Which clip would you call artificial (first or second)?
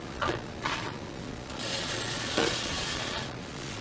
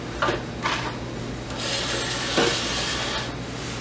first